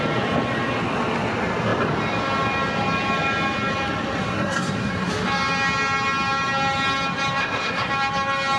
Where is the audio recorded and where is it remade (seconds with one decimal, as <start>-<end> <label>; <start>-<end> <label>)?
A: 0.0-4.2 recorded; 4.2-5.1 remade; 5.1-7.4 recorded; 7.4-7.9 remade; 7.9-8.6 recorded